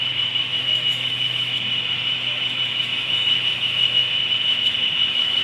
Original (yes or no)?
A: no